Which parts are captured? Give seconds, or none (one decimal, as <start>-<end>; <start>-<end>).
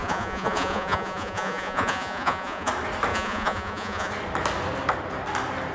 2.7-3.1; 4.1-5.7